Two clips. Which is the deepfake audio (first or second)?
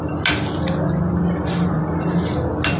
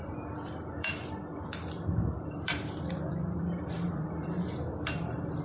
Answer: second